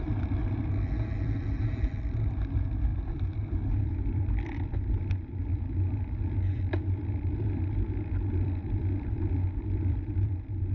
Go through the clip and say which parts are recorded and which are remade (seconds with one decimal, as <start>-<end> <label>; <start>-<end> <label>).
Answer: 0.0-10.7 remade